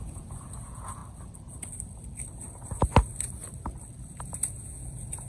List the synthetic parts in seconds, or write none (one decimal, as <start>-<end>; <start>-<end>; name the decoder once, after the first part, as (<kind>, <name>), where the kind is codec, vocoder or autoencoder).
0.0-1.0 (vocoder, Vocos); 4.2-5.3